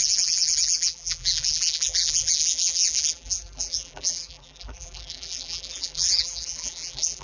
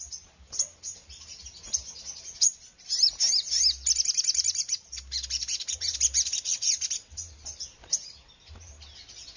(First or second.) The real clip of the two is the second